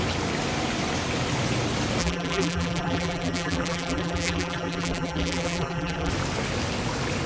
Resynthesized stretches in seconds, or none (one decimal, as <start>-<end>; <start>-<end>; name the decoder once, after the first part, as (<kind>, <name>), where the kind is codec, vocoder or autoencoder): 2.0-6.1 (vocoder, BigVGAN v2)